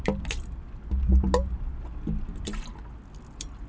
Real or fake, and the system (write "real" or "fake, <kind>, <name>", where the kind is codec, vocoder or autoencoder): real